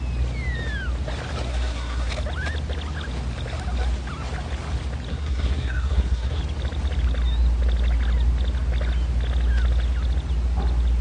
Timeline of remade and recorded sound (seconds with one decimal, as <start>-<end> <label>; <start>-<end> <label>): 0.0-1.5 recorded; 1.5-2.1 remade; 2.1-5.1 recorded; 5.1-6.4 remade; 6.4-11.0 recorded